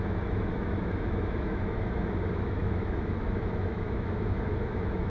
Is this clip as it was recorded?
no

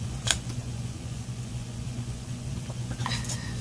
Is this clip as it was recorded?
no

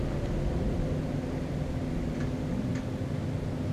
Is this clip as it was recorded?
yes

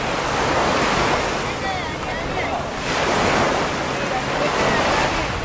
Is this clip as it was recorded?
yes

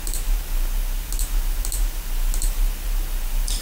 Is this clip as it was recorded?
yes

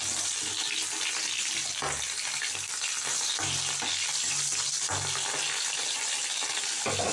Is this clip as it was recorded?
yes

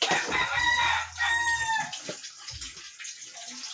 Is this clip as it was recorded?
yes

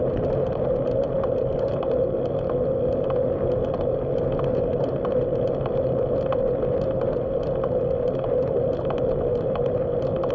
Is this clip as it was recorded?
yes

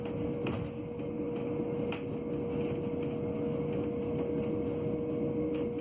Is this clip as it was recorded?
yes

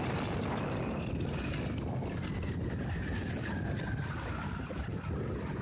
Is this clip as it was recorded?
yes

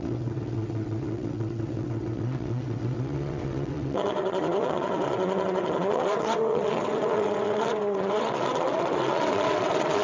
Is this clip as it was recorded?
no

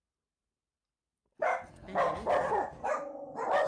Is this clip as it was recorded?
yes